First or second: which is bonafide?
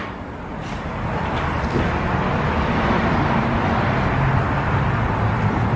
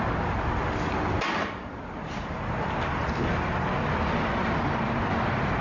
second